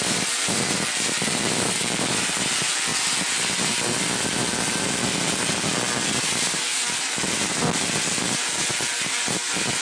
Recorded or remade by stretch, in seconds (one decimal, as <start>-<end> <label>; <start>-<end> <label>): 0.0-9.8 recorded